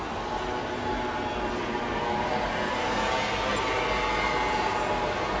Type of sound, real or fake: real